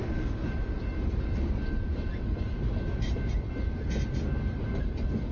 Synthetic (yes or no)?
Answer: no